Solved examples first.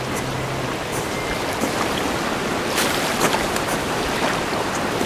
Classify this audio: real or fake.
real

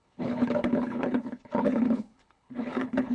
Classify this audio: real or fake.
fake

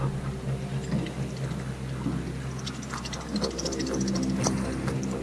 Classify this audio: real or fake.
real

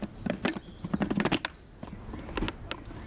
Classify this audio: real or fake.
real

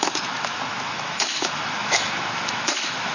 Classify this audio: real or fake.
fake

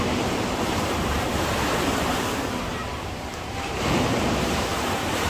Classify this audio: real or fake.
fake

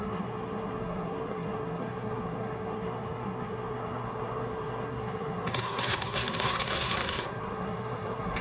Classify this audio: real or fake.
fake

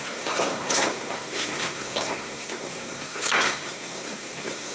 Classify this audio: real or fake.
fake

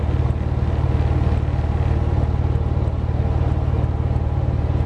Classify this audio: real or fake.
real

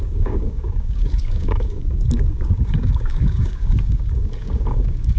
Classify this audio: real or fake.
fake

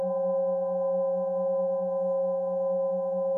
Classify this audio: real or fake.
real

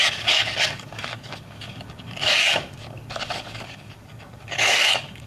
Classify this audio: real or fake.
fake